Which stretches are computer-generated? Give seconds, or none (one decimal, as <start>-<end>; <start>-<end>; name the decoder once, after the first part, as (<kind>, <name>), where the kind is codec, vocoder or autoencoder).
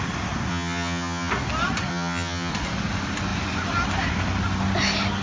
0.5-1.3 (vocoder, HiFi-GAN); 1.9-2.5